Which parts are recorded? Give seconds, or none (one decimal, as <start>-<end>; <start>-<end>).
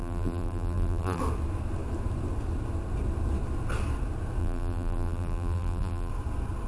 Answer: 1.2-4.4; 6.1-6.7